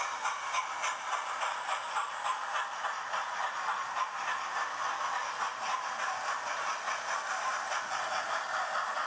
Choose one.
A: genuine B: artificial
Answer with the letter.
A